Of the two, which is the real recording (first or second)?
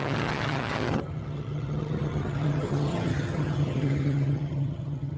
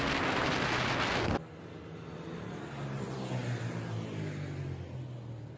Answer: second